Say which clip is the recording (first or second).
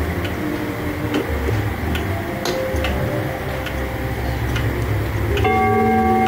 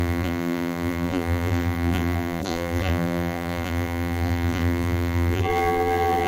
first